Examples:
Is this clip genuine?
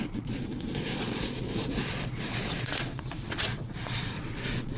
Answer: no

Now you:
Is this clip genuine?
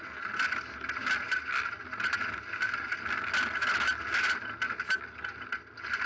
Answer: yes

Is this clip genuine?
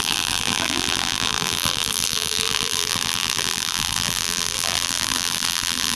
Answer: no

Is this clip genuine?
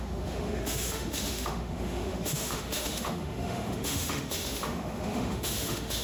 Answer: no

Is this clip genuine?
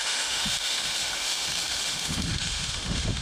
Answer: no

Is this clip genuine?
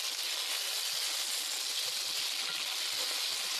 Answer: yes